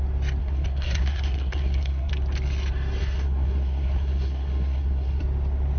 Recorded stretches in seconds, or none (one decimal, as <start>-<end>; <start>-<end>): 0.0-0.4; 2.1-3.0; 5.2-5.8